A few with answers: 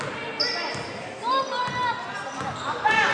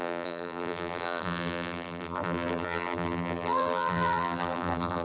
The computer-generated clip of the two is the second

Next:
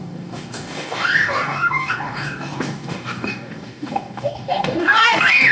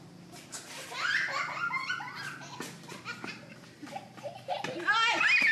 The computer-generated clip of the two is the first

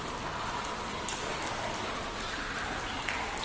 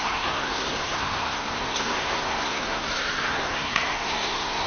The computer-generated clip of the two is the second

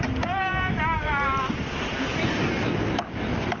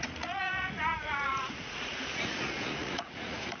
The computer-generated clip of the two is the second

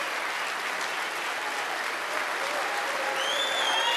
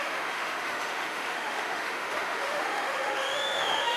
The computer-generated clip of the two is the second